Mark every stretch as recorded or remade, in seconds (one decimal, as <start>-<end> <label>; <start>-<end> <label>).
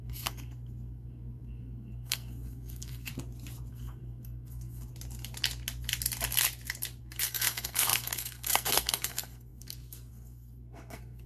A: 0.0-3.1 remade; 3.1-3.7 recorded; 3.7-4.9 remade; 4.9-7.0 recorded; 7.0-11.3 remade